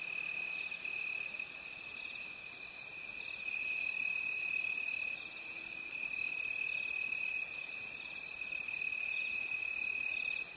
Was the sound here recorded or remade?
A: recorded